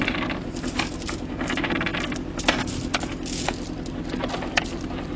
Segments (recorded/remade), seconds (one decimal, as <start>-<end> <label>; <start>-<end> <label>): 0.0-5.2 recorded